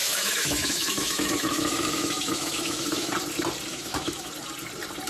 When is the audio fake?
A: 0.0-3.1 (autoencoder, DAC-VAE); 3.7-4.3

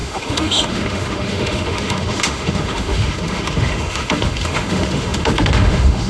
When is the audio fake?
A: 0.0-6.1 (autoencoder, DAC-VAE)

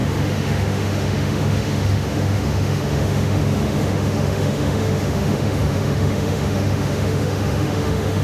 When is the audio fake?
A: 0.0-8.2 (autoencoder, DAC-VAE)

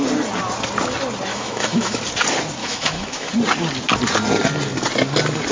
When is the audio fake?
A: 1.3-2.0 (autoencoder, DAC-VAE); 2.6-3.3

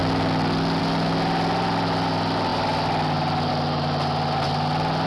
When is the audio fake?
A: none

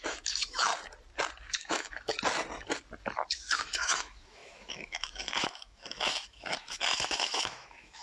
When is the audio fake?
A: 0.0-0.7 (autoencoder, DAC-VAE); 1.5-2.1; 3.3-8.0

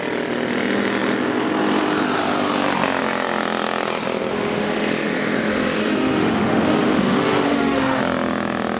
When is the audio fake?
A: 4.3-8.0 (autoencoder, DAC-VAE)